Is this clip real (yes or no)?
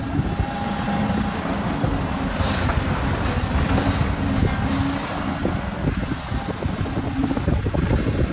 yes